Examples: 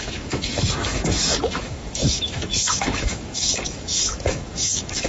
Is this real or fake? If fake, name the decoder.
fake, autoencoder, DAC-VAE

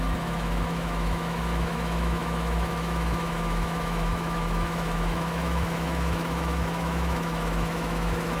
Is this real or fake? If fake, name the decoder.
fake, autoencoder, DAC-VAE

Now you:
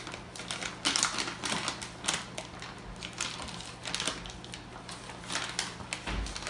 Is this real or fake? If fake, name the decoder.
real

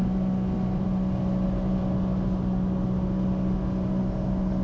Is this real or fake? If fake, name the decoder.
real